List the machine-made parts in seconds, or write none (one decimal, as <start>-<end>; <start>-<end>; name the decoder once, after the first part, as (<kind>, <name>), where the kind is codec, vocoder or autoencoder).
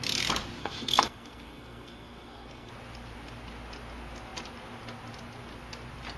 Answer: 0.6-2.7 (codec, SNAC)